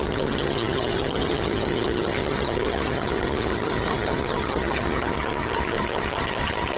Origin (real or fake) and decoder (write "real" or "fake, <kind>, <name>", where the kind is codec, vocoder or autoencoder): fake, vocoder, HiFi-GAN